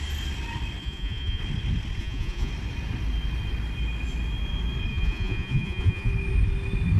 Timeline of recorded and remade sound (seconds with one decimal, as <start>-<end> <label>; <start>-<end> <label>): 0.0-0.8 recorded; 0.8-1.4 remade; 1.4-2.0 recorded; 2.0-2.5 remade; 2.5-4.9 recorded; 4.9-6.1 remade; 6.1-7.0 recorded